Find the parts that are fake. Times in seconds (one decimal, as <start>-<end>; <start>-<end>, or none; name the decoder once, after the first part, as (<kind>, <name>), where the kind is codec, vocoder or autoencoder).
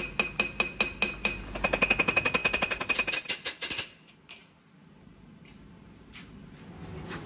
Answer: none